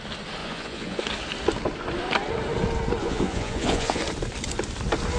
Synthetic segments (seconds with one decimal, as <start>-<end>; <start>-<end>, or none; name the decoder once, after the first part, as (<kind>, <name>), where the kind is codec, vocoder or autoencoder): 0.4-1.0 (vocoder, Vocos); 3.0-4.0